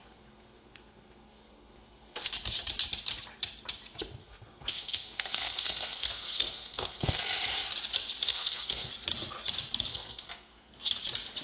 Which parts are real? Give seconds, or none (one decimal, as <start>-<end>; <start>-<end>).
2.3-4.2; 7.2-8.3; 8.9-9.9; 10.7-11.4